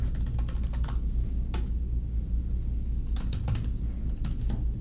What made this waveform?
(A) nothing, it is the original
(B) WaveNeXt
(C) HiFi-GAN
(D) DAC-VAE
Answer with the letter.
A